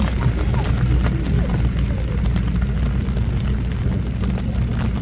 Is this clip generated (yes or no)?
no